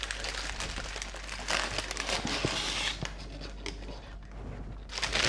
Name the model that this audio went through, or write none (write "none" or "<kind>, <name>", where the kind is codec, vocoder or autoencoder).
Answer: none